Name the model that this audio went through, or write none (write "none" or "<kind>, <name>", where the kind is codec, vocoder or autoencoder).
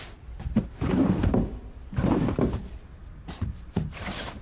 vocoder, BigVGAN v2